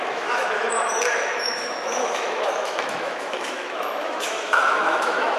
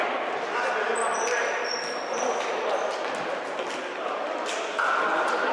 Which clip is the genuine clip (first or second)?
second